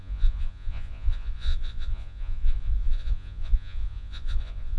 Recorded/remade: remade